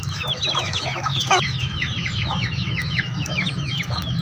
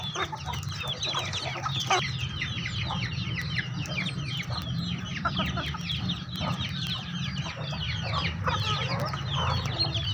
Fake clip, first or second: first